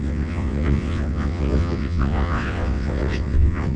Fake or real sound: fake